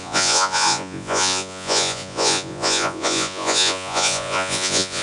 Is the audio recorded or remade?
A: remade